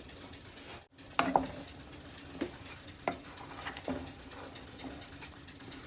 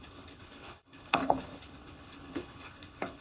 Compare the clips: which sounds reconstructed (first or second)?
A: second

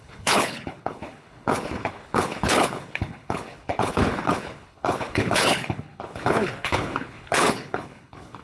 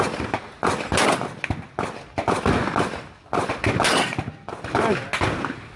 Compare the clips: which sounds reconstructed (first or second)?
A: first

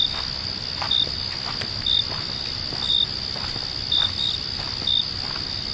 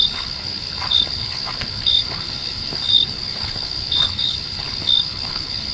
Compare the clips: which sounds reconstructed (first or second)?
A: second